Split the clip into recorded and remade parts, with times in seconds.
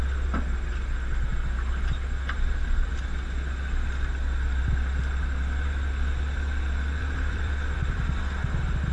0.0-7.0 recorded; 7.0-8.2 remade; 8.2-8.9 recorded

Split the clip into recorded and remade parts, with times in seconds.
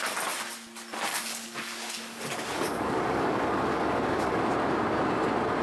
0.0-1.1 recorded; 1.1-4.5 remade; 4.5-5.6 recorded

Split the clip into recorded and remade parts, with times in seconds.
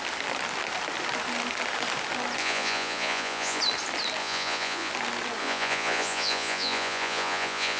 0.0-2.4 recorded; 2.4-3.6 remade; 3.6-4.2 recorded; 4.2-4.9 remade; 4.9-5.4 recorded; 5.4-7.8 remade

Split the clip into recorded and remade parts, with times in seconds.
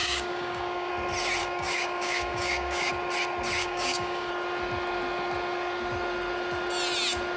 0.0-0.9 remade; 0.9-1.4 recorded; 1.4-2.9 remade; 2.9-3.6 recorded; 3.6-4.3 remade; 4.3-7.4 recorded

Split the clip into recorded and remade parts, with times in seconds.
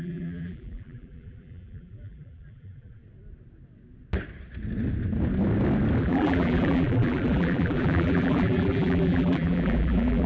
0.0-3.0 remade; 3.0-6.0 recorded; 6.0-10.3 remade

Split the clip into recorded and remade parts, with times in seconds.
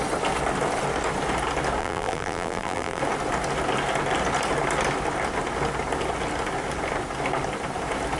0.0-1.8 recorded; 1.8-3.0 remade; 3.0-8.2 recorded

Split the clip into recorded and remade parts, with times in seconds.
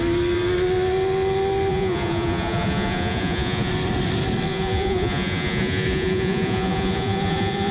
0.0-1.7 recorded; 1.7-3.7 remade; 3.7-4.5 recorded; 4.5-7.7 remade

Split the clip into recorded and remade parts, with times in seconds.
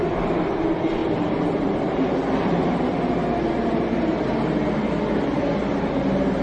0.0-6.4 recorded